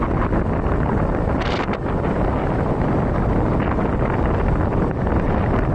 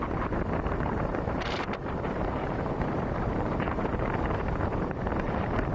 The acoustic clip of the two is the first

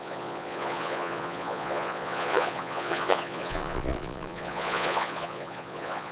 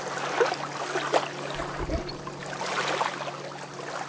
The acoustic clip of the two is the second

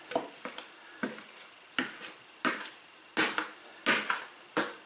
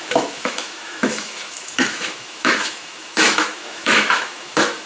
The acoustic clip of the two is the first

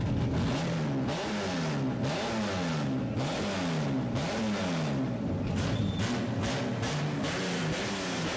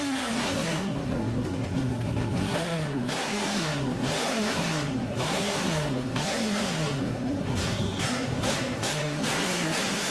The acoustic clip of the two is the first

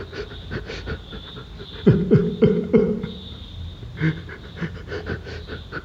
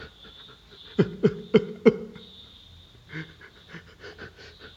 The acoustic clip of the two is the second